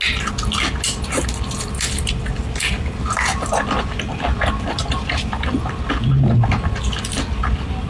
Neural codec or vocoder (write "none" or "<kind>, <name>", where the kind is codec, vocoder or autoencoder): none